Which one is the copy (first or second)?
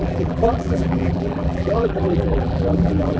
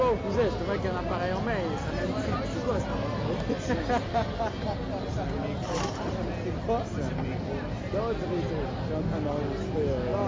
first